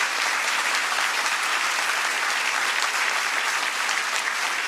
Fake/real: real